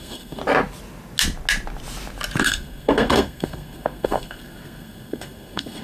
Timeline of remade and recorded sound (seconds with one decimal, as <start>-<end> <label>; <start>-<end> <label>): 0.0-0.4 remade; 0.4-2.4 recorded; 2.4-5.8 remade